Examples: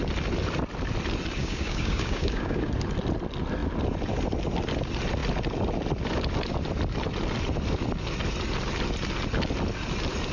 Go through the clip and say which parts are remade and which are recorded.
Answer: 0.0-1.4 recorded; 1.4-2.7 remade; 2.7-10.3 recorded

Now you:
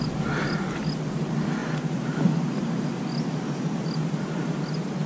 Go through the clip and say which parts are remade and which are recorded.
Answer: 0.0-5.1 recorded

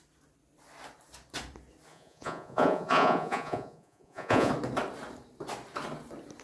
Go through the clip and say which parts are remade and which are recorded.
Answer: 0.0-1.9 recorded; 1.9-4.5 remade; 4.5-6.4 recorded